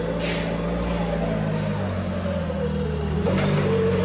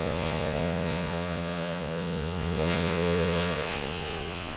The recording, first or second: first